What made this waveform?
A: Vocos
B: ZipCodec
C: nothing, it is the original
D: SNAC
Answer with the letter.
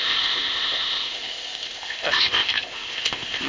B